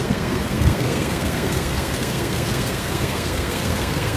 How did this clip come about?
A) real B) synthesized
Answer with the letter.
B